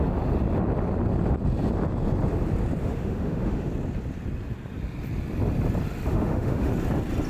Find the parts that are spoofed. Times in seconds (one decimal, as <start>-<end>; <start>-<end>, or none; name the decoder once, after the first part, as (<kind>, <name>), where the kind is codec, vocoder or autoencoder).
2.8-3.7 (autoencoder, DAC-VAE); 6.1-6.7

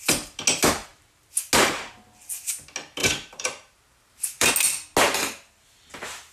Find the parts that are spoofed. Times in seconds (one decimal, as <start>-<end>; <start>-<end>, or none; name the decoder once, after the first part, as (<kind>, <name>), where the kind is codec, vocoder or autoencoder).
3.0-4.5 (vocoder, BigVGAN v2)

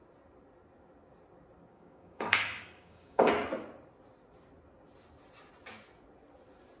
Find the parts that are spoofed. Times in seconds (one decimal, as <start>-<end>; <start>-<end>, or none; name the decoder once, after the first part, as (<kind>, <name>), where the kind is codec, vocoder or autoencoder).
1.7-3.3 (codec, DAC)